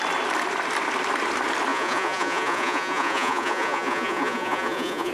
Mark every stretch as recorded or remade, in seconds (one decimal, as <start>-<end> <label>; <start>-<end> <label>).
0.0-1.7 recorded; 1.7-5.1 remade